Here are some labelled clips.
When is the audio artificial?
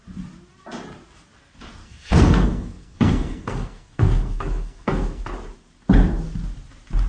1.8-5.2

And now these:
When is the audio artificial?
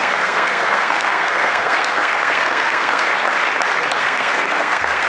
0.0-3.1; 4.0-5.1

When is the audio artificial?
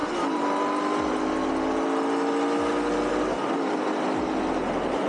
none